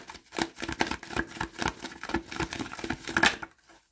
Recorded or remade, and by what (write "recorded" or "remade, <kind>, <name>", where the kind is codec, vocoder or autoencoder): recorded